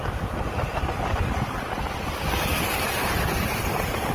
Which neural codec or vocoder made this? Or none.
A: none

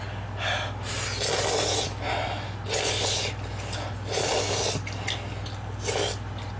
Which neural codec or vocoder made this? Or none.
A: none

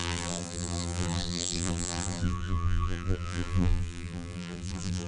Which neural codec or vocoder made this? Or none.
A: vocoder, BigVGAN v2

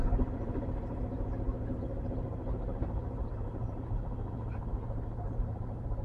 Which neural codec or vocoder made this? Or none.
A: vocoder, BigVGAN v2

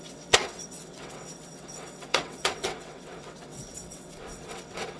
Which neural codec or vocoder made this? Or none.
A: vocoder, WaveNeXt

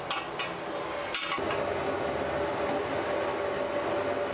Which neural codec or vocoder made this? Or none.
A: none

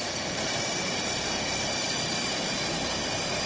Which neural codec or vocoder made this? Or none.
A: none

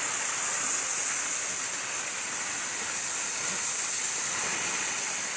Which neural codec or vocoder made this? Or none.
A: none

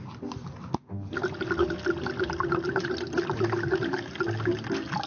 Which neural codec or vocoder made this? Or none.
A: none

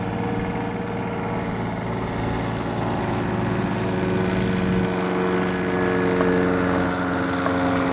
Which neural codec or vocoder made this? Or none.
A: none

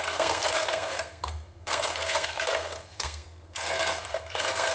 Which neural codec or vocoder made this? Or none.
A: codec, SNAC